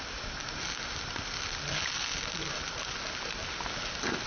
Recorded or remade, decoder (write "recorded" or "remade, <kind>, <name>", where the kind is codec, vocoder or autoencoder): recorded